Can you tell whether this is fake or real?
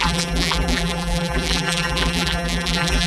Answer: fake